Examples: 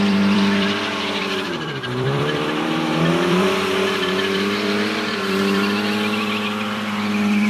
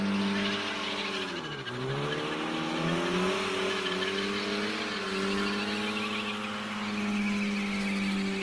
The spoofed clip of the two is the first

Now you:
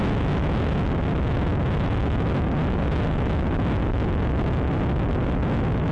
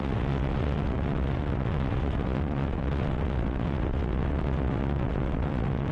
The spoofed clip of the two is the second